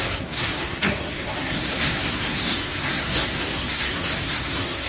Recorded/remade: remade